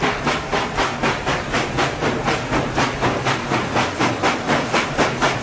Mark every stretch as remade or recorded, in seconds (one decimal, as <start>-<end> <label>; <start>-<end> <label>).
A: 0.0-5.4 recorded